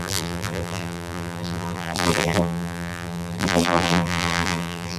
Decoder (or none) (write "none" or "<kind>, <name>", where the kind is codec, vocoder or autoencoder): vocoder, BigVGAN v2